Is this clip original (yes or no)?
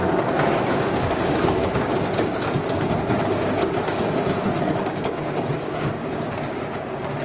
no